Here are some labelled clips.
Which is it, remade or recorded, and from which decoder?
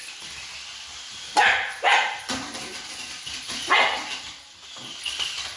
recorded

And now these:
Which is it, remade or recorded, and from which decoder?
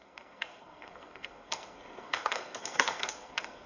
remade, codec, SNAC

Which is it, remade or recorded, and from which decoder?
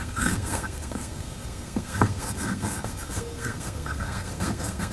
remade, codec, SNAC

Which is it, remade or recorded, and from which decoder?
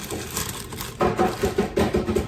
recorded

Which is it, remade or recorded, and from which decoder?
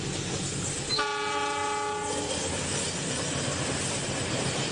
recorded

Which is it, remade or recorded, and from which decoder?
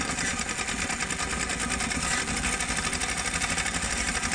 recorded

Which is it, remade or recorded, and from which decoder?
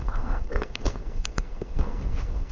remade, codec, SNAC